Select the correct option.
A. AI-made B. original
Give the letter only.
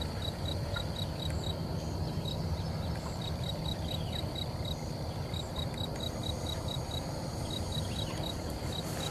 A